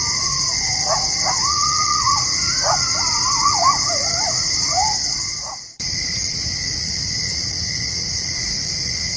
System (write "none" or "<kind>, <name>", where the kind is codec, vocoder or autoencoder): vocoder, Vocos